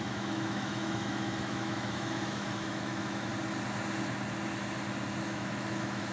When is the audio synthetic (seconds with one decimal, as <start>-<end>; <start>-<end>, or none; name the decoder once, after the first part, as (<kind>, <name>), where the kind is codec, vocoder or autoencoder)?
0.0-3.3 (autoencoder, DAC-VAE); 5.2-6.1